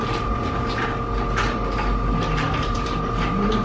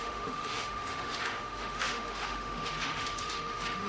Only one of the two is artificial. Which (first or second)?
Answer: second